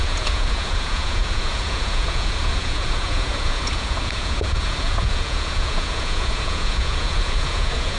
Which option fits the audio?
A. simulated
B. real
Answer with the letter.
A